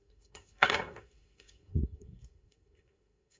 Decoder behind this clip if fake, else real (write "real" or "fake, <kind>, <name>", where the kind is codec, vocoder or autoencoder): fake, codec, SNAC